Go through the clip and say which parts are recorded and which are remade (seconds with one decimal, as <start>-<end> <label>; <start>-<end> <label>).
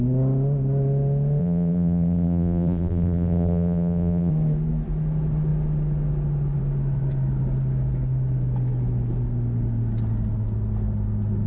0.0-1.4 recorded; 1.4-4.3 remade; 4.3-11.5 recorded